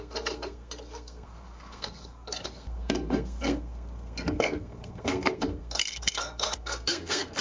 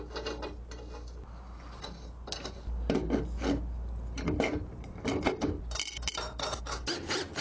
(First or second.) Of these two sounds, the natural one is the second